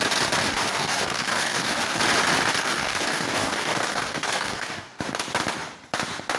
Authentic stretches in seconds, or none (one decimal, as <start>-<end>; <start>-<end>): 0.0-0.4; 2.0-2.6; 5.0-6.4